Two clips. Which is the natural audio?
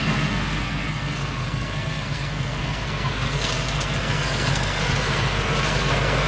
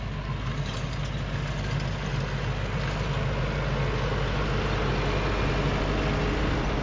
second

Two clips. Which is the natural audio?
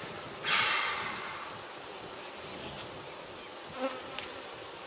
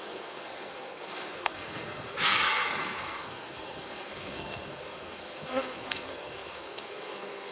first